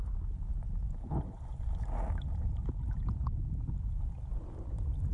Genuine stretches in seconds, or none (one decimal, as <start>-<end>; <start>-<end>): 0.0-5.1